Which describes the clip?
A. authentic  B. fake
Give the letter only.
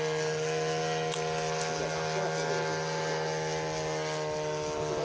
A